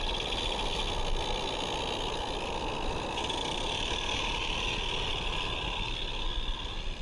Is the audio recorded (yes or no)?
yes